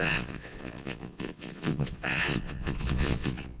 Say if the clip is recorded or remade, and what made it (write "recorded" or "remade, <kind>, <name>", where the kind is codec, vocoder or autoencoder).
remade, vocoder, Vocos